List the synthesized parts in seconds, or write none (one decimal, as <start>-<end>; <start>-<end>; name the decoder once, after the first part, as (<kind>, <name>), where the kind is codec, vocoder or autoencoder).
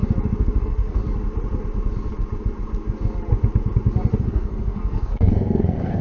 0.6-1.0 (codec, SNAC); 4.2-6.0